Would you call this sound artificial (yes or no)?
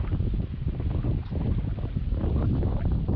no